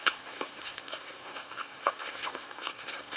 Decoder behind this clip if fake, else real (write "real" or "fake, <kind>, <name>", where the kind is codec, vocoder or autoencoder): fake, codec, SNAC